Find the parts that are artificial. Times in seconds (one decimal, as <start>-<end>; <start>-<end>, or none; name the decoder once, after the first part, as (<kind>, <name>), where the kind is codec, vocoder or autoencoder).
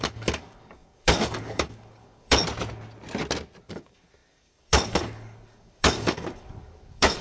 0.0-2.4 (codec, DAC); 3.7-7.2